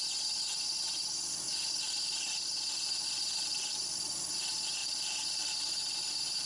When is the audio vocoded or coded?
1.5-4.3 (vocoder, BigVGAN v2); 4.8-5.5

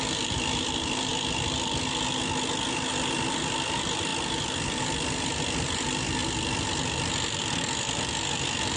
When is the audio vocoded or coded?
0.0-1.1 (vocoder, BigVGAN v2); 3.1-6.2; 7.4-8.8

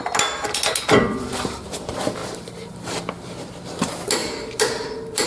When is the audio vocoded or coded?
2.2-3.0 (vocoder, BigVGAN v2); 4.2-5.3

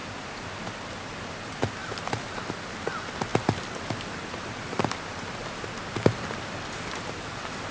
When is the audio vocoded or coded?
0.8-7.7 (vocoder, BigVGAN v2)

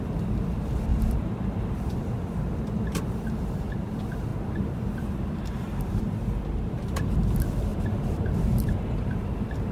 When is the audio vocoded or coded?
0.9-2.0 (vocoder, BigVGAN v2); 4.3-6.0; 7.7-9.7

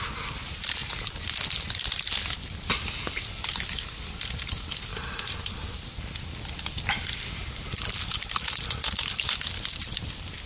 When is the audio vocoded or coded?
4.9-5.7 (vocoder, BigVGAN v2)

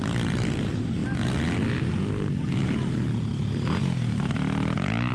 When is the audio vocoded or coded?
3.8-5.1 (vocoder, BigVGAN v2)